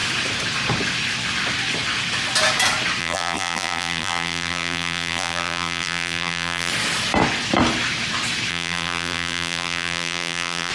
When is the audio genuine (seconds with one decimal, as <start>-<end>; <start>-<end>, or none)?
0.0-3.0; 6.7-8.5